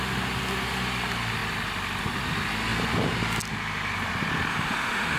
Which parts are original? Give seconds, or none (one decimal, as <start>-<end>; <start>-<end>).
0.0-4.5